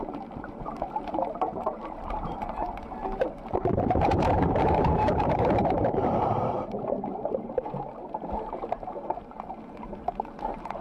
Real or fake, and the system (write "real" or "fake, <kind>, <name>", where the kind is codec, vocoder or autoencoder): fake, vocoder, BigVGAN v2